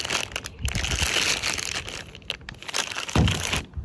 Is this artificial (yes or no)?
no